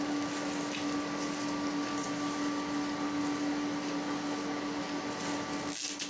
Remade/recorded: recorded